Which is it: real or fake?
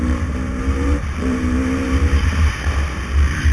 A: fake